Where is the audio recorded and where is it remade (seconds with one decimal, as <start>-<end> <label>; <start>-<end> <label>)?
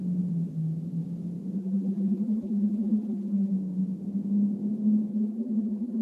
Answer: 0.0-1.6 recorded; 1.6-3.5 remade; 3.5-5.1 recorded; 5.1-6.0 remade